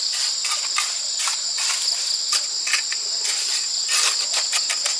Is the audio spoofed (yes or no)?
no